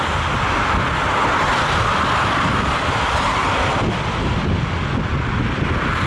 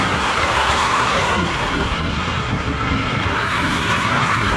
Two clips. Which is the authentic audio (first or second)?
first